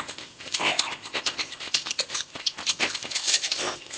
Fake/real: fake